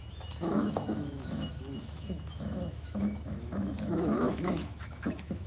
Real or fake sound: fake